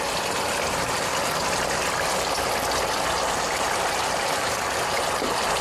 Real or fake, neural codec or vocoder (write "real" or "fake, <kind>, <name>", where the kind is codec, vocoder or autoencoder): real